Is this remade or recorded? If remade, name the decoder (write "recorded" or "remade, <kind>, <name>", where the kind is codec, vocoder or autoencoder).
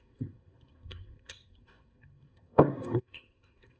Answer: remade, codec, SNAC